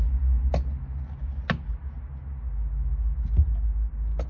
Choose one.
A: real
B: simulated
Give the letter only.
A